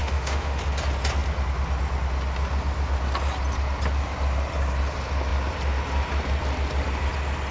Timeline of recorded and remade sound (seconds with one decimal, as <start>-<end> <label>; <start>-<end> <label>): 0.0-0.6 remade; 0.6-7.5 recorded